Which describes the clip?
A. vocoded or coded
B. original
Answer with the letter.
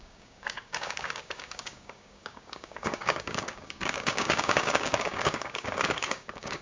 A